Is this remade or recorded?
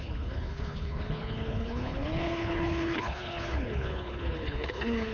remade